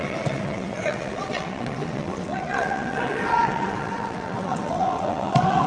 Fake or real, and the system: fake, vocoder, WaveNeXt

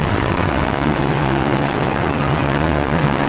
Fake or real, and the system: fake, vocoder, WaveNeXt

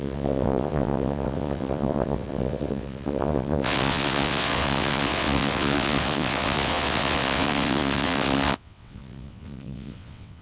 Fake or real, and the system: fake, vocoder, WaveNeXt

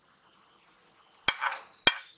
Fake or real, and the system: real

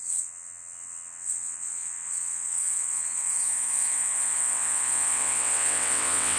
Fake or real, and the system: fake, vocoder, WaveNeXt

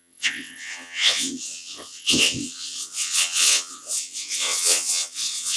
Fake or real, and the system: fake, vocoder, WaveNeXt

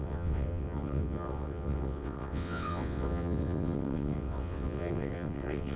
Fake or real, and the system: fake, vocoder, WaveNeXt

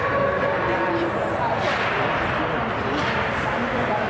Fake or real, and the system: real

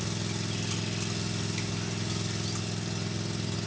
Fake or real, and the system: real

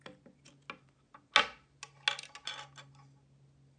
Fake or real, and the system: real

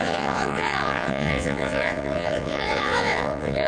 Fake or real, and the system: fake, vocoder, WaveNeXt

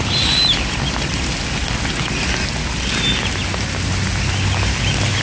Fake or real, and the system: real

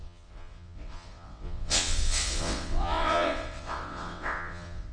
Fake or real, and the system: fake, vocoder, WaveNeXt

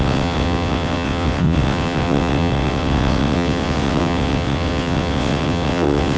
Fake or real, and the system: fake, vocoder, WaveNeXt